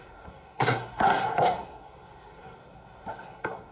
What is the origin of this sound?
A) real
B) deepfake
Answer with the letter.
B